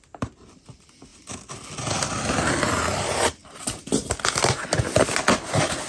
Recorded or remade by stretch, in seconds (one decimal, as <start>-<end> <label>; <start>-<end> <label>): 0.0-5.9 recorded